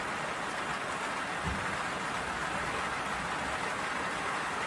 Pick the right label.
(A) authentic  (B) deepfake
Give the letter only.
A